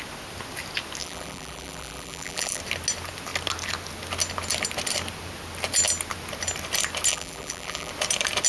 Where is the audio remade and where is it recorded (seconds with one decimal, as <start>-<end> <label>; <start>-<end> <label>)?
0.0-1.0 recorded; 1.0-2.6 remade; 2.6-7.1 recorded; 7.1-7.9 remade; 7.9-8.5 recorded